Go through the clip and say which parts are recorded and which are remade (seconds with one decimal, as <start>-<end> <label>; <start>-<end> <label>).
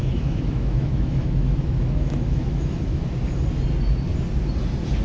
0.0-3.0 remade; 3.0-5.0 recorded